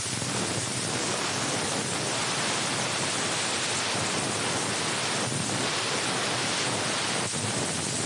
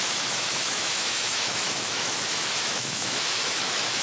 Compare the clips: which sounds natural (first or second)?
first